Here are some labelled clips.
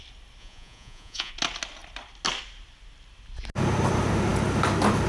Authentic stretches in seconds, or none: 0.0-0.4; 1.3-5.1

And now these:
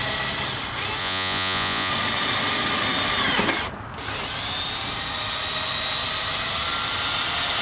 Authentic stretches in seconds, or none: 0.0-1.0; 1.9-7.6

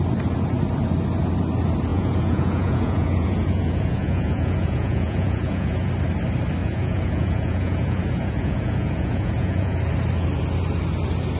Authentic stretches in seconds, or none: 0.0-1.9; 5.9-6.6; 9.8-11.4

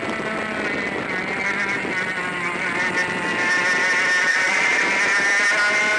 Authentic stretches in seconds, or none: 0.0-4.2; 4.8-6.0

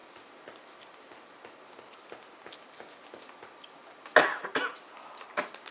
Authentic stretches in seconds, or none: 0.0-5.7

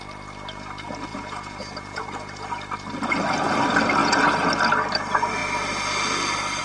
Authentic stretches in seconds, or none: 0.0-1.1; 2.0-4.0; 4.5-6.6

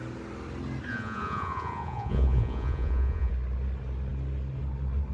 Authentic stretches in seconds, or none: 0.0-0.9; 3.3-5.1